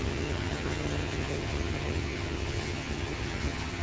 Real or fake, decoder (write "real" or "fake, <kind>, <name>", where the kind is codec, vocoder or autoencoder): fake, vocoder, HiFi-GAN